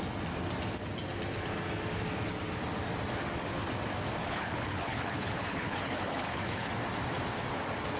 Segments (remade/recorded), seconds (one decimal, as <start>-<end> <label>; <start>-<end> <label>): 0.0-4.2 recorded; 4.2-6.7 remade; 6.7-8.0 recorded